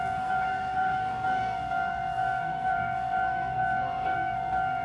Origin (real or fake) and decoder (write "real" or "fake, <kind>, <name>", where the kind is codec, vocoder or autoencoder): fake, codec, SNAC